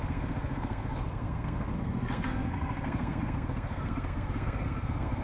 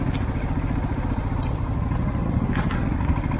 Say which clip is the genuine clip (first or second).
second